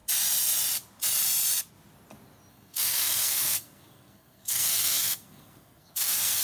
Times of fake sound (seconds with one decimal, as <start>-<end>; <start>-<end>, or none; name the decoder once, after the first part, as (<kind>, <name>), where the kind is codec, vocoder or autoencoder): 2.5-6.4 (codec, SNAC)